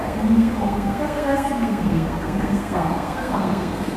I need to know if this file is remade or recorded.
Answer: remade